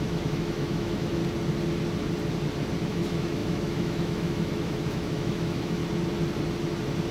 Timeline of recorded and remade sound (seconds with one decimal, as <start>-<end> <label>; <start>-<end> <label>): 0.0-1.2 remade; 1.2-2.8 recorded; 2.8-5.8 remade; 5.8-7.1 recorded